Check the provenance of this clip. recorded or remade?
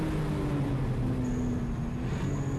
recorded